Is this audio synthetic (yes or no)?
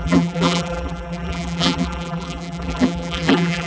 yes